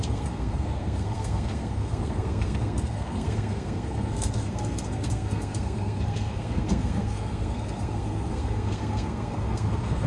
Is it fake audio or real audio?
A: fake